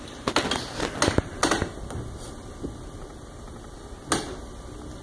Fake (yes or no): no